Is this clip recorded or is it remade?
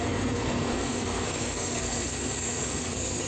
remade